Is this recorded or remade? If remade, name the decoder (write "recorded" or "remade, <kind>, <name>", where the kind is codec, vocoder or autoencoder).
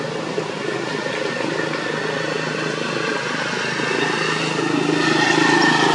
recorded